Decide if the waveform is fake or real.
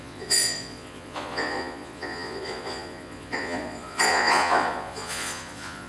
fake